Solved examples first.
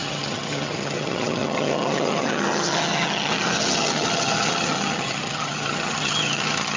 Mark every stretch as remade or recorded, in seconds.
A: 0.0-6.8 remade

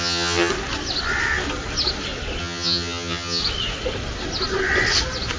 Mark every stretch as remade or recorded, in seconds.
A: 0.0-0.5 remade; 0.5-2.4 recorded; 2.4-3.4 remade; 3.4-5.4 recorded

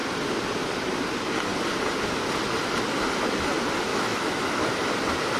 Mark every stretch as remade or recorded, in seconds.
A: 0.0-3.9 recorded; 3.9-4.6 remade; 4.6-5.4 recorded

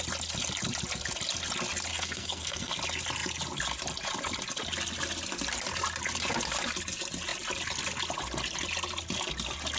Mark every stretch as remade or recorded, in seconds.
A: 0.0-1.9 recorded; 1.9-2.7 remade; 2.7-9.8 recorded

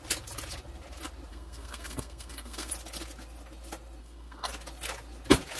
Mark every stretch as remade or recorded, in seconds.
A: 0.0-1.3 recorded; 1.3-2.7 remade; 2.7-4.0 recorded; 4.0-4.5 remade; 4.5-5.6 recorded